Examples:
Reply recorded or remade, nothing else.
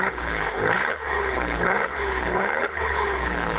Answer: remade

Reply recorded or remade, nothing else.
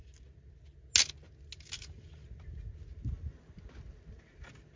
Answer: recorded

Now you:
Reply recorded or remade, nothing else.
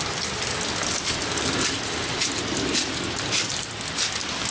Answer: recorded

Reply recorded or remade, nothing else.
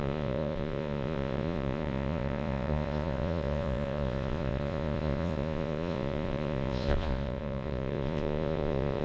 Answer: remade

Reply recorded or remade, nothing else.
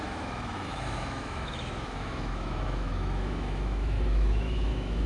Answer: remade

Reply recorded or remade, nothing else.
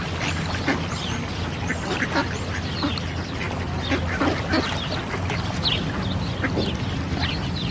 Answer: recorded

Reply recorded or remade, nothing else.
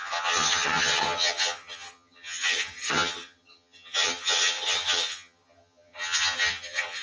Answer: remade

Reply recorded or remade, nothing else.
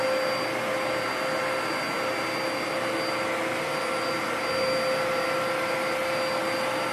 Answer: recorded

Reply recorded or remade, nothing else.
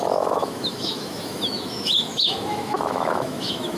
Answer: remade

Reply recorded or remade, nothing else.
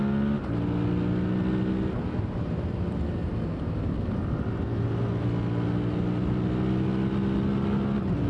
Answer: recorded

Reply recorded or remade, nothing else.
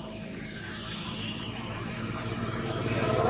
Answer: remade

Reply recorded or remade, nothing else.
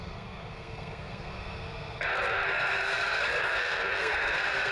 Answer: remade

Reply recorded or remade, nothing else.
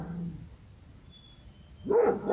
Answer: recorded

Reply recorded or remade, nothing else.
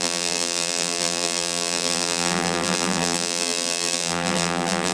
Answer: remade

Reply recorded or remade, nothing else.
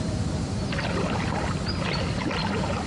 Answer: recorded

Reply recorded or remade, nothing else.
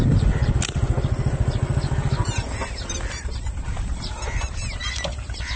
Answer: recorded